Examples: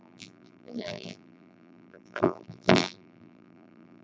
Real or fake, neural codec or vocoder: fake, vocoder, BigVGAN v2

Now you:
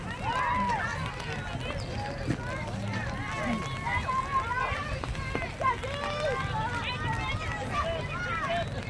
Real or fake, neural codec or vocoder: real